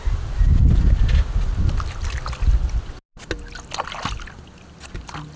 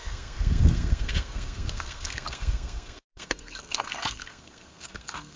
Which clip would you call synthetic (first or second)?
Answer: second